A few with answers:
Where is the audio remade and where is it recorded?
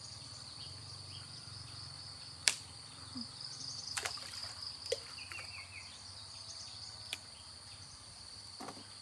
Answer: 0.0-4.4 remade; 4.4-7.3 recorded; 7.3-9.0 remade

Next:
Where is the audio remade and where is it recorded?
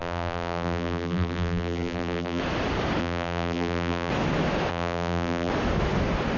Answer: 0.0-2.4 remade; 2.4-3.0 recorded; 3.0-4.1 remade; 4.1-4.7 recorded; 4.7-5.5 remade; 5.5-6.4 recorded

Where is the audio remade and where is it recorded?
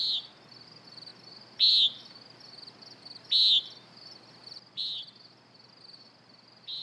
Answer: 0.0-6.8 recorded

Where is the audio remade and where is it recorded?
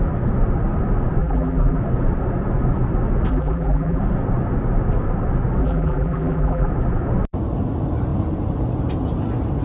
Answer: 0.0-1.2 recorded; 1.2-1.8 remade; 1.8-3.3 recorded; 3.3-4.0 remade; 4.0-5.6 recorded; 5.6-6.7 remade; 6.7-9.6 recorded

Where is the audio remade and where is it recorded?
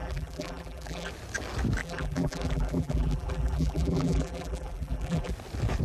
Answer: 0.0-1.1 remade; 1.1-1.8 recorded; 1.8-5.3 remade; 5.3-5.8 recorded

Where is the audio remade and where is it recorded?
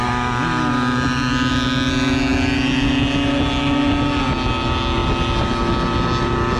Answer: 0.0-6.6 recorded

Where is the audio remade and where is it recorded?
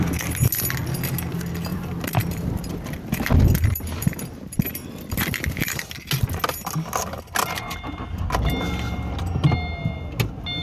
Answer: 0.0-1.7 recorded; 1.7-5.8 remade; 5.8-10.6 recorded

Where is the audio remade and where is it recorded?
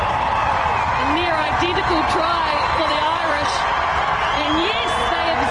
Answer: 0.0-1.4 recorded; 1.4-4.7 remade; 4.7-5.5 recorded